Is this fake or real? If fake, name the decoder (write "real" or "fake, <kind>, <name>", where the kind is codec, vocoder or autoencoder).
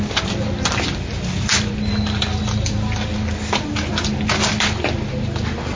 real